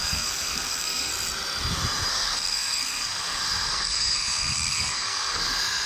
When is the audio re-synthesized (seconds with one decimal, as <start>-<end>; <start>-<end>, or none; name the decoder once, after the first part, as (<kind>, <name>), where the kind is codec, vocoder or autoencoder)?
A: 0.0-1.1 (codec, SNAC); 2.1-5.9